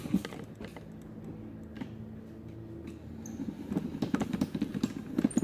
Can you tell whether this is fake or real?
real